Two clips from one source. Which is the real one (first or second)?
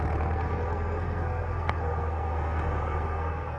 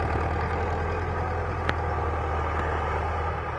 second